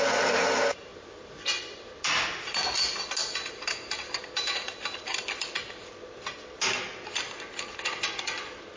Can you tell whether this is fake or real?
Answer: real